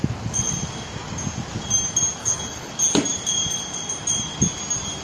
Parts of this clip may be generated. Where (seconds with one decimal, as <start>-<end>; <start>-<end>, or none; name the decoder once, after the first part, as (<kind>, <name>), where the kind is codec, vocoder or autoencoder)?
2.2-2.7 (codec, HILCodec)